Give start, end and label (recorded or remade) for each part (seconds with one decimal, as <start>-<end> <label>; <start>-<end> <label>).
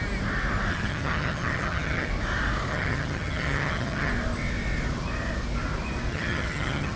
0.0-0.7 recorded; 0.7-2.1 remade; 2.1-2.7 recorded; 2.7-4.1 remade; 4.1-6.1 recorded; 6.1-7.0 remade